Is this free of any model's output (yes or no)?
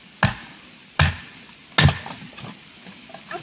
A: yes